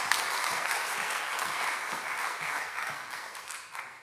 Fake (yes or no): yes